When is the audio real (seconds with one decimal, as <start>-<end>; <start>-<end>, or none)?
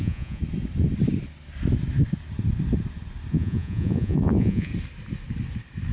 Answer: 0.4-3.3; 4.7-5.9